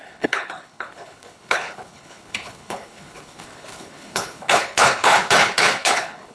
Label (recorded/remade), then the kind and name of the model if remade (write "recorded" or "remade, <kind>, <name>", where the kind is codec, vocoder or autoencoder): remade, codec, HILCodec